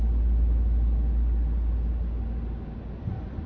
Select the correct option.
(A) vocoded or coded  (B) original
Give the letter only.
B